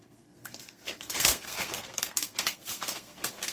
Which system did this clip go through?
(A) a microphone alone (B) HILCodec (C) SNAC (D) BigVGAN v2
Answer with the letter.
C